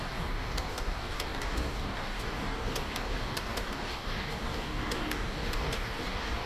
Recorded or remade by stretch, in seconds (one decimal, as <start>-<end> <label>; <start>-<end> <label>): 0.0-6.5 remade